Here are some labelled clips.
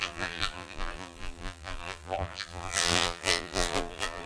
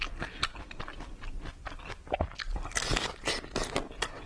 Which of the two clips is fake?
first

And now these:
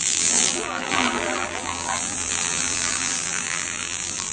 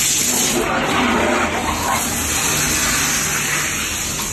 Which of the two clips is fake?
first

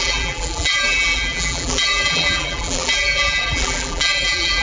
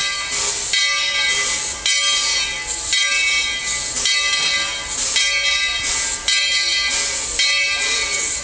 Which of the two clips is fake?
first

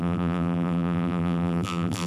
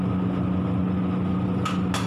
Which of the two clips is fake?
first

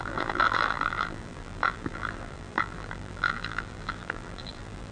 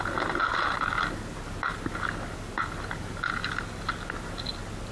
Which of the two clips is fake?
first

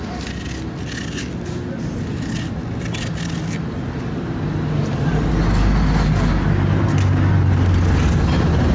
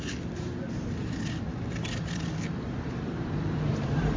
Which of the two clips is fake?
second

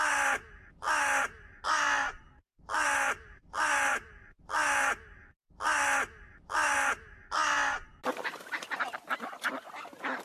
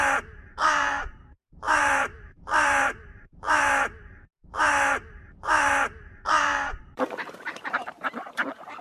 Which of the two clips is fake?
second